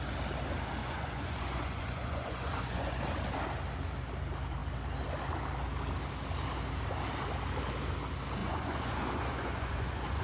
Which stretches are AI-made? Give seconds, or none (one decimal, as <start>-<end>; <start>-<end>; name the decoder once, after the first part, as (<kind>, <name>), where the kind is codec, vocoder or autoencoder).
0.8-3.0 (vocoder, Vocos); 8.4-10.2